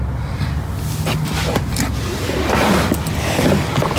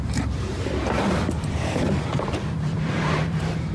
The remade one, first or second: second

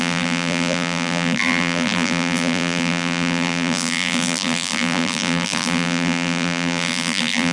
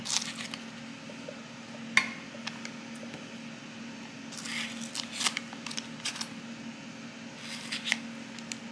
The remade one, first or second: first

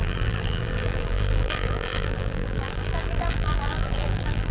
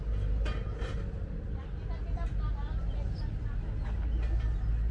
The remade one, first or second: first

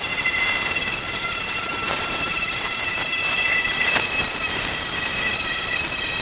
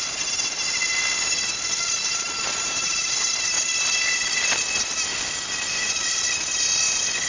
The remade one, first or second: first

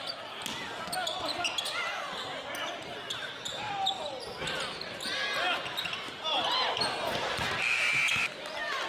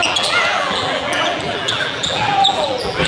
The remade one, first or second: second